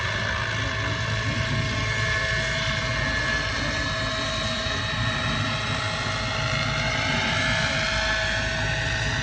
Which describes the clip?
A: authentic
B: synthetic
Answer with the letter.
A